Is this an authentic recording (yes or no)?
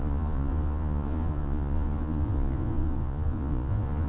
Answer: no